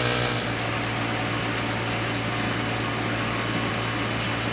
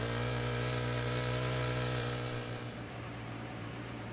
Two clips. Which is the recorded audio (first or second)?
first